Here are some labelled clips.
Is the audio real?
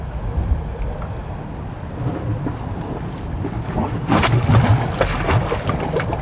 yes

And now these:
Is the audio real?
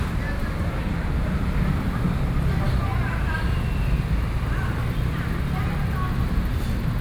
yes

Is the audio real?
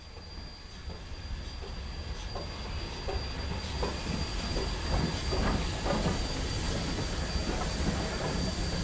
yes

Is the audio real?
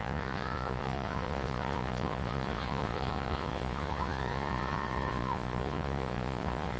no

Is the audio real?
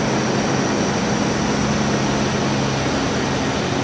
yes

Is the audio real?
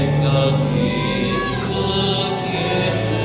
yes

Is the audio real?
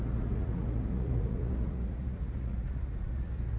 no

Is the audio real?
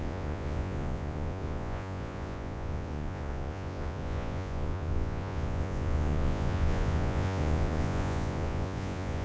no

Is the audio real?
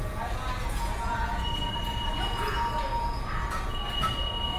no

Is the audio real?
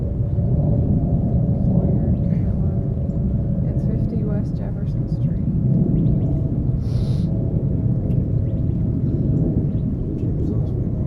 no